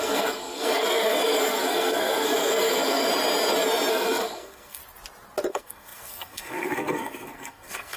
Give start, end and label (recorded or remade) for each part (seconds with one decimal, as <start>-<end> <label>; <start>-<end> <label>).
0.0-3.1 remade; 3.1-3.9 recorded; 3.9-4.8 remade; 4.8-5.5 recorded; 5.5-8.0 remade